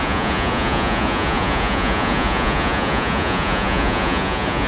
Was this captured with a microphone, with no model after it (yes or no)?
no